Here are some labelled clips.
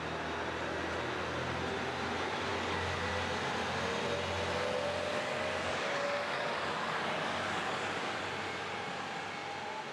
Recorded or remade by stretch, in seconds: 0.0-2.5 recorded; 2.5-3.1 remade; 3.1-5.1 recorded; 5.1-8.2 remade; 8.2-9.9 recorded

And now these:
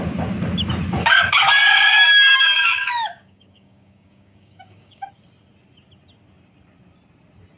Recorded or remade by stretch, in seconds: 0.0-1.0 recorded; 1.0-5.1 remade; 5.1-7.6 recorded

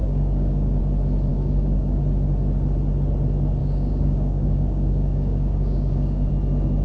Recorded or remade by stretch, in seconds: 0.0-0.8 remade; 0.8-1.3 recorded; 1.3-2.0 remade; 2.0-3.6 recorded; 3.6-6.3 remade; 6.3-6.8 recorded